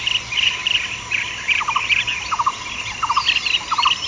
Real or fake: real